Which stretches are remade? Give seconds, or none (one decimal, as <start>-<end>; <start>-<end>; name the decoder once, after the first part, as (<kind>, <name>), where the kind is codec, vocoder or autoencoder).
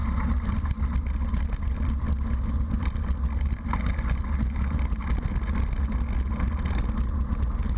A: none